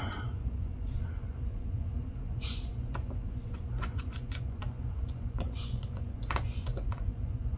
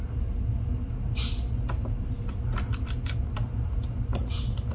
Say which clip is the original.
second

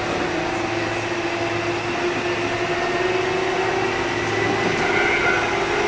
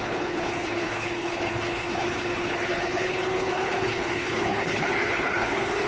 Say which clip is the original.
first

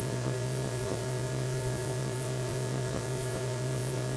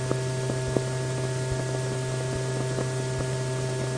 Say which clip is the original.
second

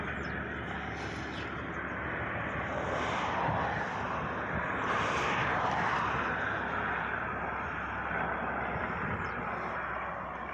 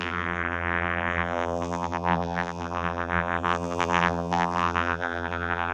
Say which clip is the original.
first